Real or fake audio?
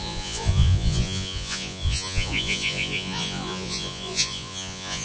fake